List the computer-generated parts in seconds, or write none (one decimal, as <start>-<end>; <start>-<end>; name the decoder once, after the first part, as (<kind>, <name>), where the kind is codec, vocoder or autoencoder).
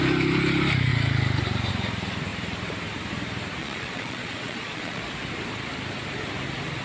3.6-5.0 (vocoder, Vocos)